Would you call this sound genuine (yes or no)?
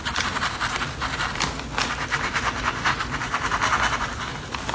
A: yes